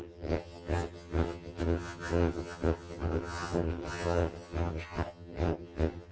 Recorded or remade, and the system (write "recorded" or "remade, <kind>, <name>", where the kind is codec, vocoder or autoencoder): remade, vocoder, HiFi-GAN